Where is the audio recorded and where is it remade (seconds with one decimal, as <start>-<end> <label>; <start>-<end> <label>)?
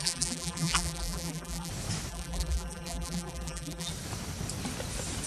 0.0-1.7 remade; 1.7-2.1 recorded; 2.1-3.9 remade; 3.9-5.3 recorded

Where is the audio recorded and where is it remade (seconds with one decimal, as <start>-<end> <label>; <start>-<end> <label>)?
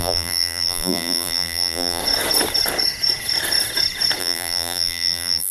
0.0-2.0 remade; 2.0-4.2 recorded; 4.2-5.5 remade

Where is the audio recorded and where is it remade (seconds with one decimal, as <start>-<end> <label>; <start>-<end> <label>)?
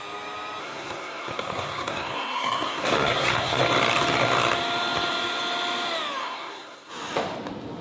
0.0-0.6 recorded; 0.6-3.6 remade; 3.6-6.2 recorded; 6.2-6.9 remade; 6.9-7.8 recorded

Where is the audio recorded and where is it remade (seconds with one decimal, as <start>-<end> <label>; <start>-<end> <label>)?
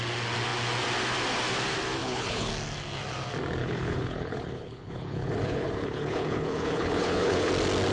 0.0-2.0 recorded; 2.0-2.5 remade; 2.5-3.6 recorded; 3.6-7.5 remade; 7.5-7.9 recorded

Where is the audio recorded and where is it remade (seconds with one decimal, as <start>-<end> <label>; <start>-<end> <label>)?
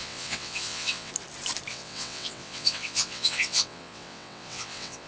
0.0-1.1 remade; 1.1-1.7 recorded; 1.7-5.1 remade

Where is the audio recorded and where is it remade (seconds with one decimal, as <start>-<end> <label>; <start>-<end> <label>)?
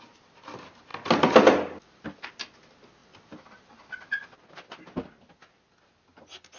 0.0-6.6 recorded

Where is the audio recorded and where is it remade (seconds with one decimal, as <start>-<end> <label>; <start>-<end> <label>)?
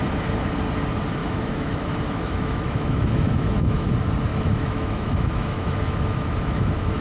0.0-1.2 recorded; 1.2-3.9 remade; 3.9-4.3 recorded; 4.3-7.0 remade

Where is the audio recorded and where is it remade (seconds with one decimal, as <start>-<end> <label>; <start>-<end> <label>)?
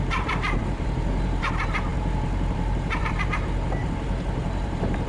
0.0-5.1 remade